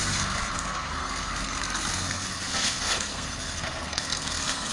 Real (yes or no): no